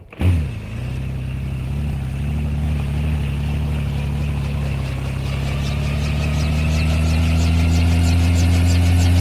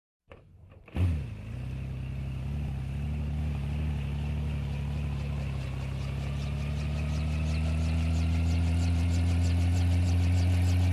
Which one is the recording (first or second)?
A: first